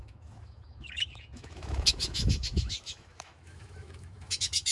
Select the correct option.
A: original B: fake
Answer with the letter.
B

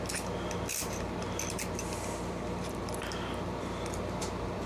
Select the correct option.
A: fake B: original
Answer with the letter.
B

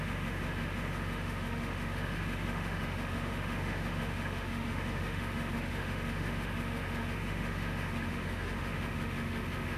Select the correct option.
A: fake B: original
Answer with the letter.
A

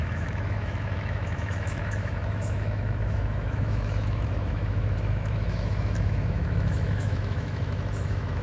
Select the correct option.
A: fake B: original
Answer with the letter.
A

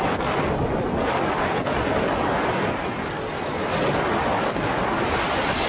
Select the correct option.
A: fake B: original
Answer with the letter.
B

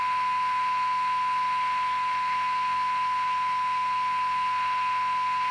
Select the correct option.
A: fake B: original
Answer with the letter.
A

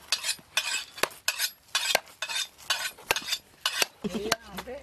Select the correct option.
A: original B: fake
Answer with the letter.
A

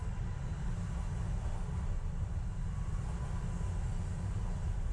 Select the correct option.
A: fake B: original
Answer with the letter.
B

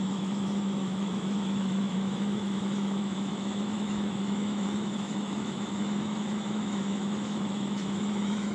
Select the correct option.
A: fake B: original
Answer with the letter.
A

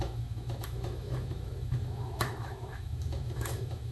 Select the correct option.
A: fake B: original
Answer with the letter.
A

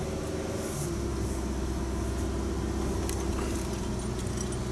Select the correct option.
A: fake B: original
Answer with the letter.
B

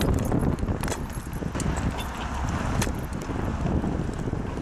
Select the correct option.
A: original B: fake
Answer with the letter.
A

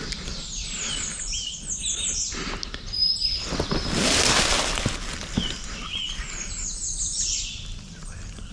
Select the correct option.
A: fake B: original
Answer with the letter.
B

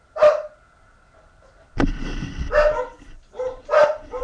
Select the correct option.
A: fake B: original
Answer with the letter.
B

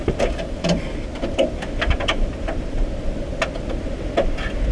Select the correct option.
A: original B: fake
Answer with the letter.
A